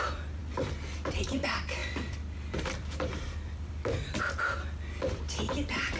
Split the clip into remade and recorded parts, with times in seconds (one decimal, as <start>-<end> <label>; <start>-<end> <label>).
0.0-1.8 recorded; 1.8-5.2 remade; 5.2-6.0 recorded